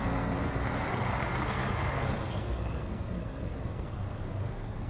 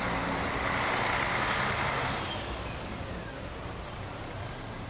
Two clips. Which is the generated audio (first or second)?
first